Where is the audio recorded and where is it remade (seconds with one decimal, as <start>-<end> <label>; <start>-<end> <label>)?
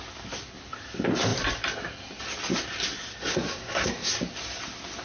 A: 0.0-3.3 recorded; 3.3-4.1 remade; 4.1-5.0 recorded